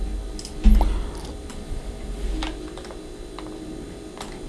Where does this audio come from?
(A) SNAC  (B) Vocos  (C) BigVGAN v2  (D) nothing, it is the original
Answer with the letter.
D